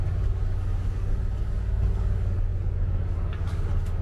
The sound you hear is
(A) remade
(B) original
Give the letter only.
A